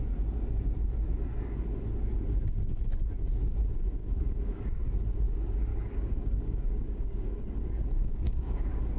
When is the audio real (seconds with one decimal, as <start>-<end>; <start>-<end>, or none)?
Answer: 0.0-4.0; 4.6-5.7; 7.4-8.0

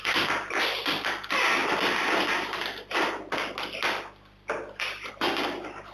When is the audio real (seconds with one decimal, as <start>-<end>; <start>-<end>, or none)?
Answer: 1.6-5.1